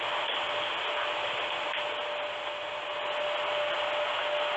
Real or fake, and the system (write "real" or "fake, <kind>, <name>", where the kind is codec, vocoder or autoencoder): real